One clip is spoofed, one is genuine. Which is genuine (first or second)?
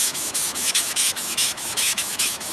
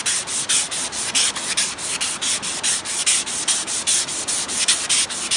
second